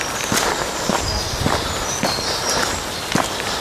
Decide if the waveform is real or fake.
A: real